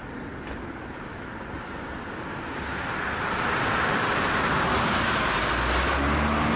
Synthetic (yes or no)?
no